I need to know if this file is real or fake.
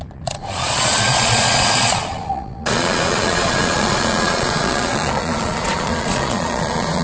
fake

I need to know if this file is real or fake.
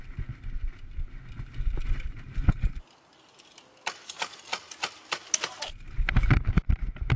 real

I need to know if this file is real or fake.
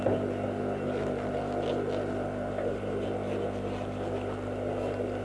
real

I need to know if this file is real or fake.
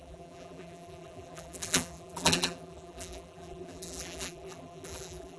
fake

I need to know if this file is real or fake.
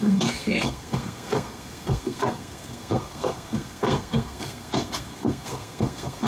fake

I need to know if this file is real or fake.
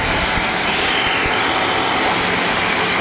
fake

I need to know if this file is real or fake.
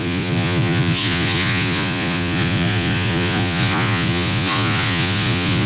fake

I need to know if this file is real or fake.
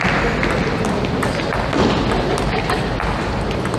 real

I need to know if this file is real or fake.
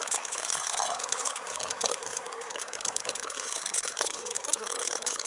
fake